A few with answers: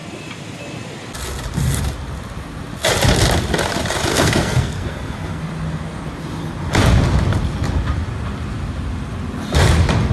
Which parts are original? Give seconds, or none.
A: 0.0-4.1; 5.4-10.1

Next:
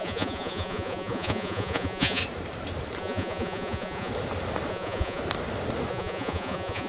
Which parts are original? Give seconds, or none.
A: 2.2-3.0; 4.1-4.7; 5.2-5.9

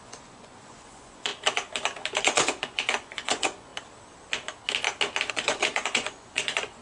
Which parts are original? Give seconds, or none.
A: 1.3-2.2; 3.7-5.3

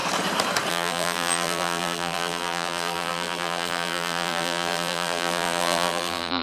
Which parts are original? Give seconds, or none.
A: 0.0-0.7

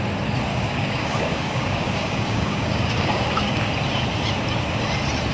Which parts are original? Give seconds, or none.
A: 0.0-0.5; 3.7-5.3

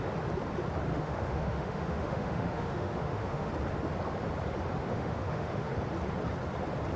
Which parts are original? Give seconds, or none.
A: 0.0-0.9; 3.5-4.8; 5.7-7.0

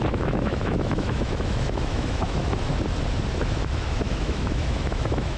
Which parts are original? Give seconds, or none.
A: 2.4-3.4